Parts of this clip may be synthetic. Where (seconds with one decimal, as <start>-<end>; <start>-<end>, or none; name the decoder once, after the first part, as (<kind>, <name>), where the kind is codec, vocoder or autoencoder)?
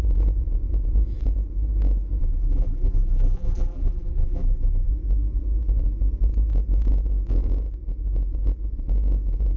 2.2-4.9 (vocoder, BigVGAN v2)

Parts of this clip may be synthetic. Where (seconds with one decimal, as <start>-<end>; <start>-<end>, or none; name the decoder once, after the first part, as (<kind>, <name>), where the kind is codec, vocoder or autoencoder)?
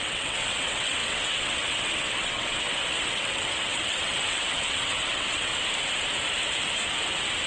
0.0-5.5 (vocoder, WaveNeXt)